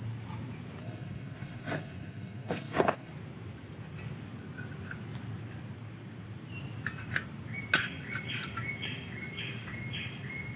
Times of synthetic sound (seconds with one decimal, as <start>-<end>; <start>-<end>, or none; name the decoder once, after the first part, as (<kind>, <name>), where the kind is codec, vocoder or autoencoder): 0.8-3.1 (codec, SNAC)